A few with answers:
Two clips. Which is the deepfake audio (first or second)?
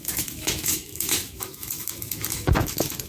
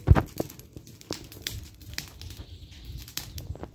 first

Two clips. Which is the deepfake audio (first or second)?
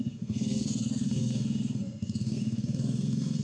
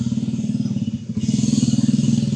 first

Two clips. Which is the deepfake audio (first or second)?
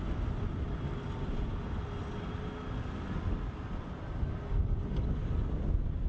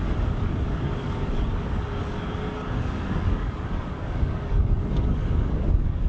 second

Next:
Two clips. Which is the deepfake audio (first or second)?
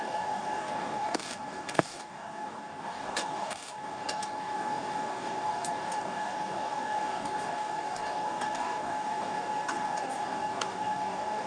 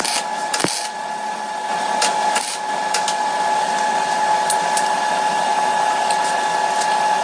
first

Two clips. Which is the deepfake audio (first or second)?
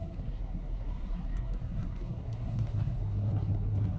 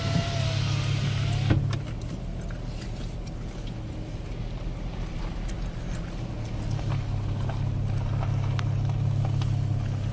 first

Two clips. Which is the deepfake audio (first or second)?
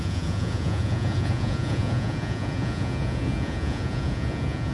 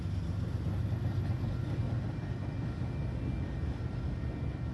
first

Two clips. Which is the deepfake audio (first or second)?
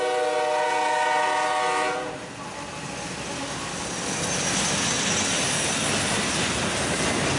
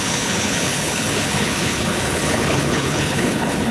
second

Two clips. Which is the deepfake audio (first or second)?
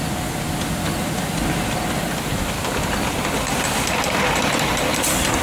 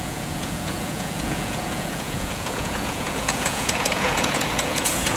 second